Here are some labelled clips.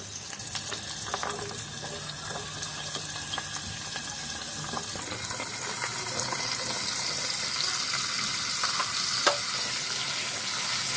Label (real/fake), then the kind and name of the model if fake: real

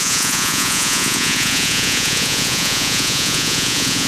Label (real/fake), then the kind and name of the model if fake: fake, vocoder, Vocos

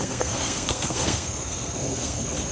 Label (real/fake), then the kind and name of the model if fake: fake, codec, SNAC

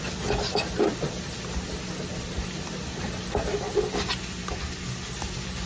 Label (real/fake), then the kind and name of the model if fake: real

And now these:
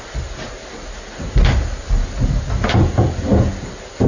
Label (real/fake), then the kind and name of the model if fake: real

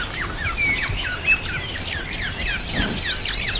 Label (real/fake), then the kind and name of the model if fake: fake, vocoder, BigVGAN v2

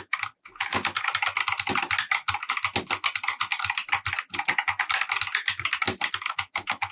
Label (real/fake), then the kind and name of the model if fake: real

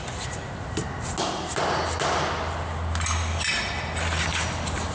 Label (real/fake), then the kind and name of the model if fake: real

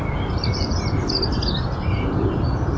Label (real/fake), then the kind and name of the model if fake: real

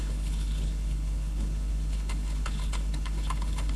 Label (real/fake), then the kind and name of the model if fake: fake, codec, HILCodec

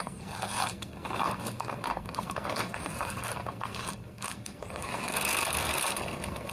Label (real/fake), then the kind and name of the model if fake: fake, codec, SNAC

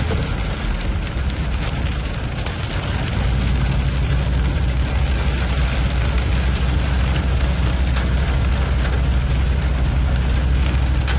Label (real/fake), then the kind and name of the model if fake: real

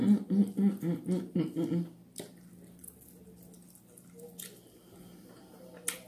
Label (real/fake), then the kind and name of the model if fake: real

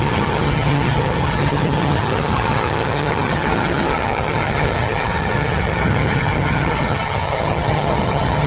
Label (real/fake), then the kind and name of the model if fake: fake, vocoder, HiFi-GAN